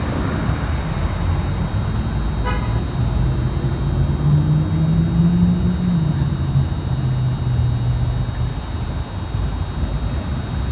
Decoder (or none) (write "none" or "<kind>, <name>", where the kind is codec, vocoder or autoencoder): none